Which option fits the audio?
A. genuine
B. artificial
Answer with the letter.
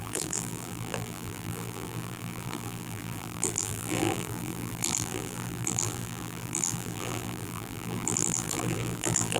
B